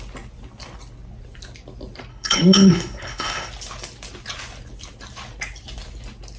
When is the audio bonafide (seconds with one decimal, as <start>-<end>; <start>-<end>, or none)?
0.0-2.1; 3.5-6.4